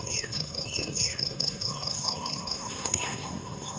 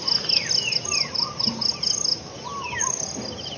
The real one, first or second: second